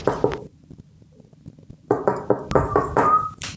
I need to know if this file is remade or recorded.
recorded